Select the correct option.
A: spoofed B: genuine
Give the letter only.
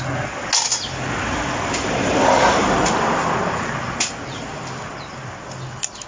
B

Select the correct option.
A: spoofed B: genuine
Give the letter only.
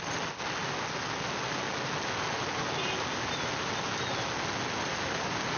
B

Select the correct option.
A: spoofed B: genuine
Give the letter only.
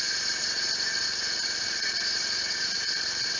A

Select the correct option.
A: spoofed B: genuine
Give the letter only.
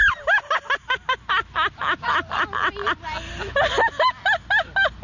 B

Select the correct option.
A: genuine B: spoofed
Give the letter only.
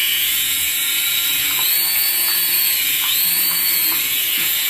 B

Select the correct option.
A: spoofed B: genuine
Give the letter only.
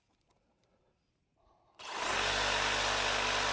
B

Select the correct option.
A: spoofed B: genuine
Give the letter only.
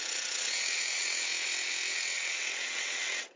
A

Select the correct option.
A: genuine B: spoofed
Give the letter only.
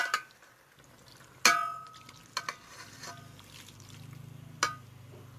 A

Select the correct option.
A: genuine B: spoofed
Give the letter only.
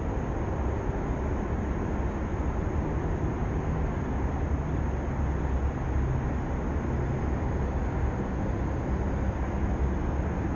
A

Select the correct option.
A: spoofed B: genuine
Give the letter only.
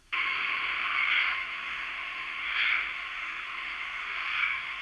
A